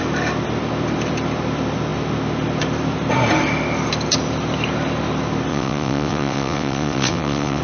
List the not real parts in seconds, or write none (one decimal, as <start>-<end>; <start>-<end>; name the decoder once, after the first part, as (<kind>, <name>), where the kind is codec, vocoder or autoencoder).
5.5-7.6 (vocoder, WaveNeXt)